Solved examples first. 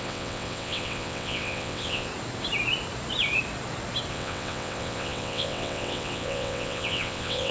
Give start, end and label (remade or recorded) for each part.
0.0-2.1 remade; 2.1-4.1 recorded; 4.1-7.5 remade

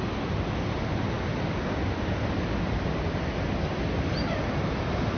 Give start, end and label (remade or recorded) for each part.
0.0-5.2 recorded